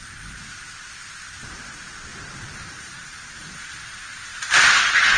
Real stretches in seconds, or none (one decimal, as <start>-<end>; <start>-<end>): 0.0-2.1; 3.2-5.2